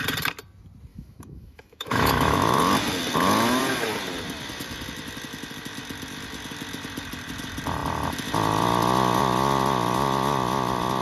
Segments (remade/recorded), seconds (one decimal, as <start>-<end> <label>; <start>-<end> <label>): 0.0-0.9 recorded; 0.9-2.6 remade; 2.6-11.0 recorded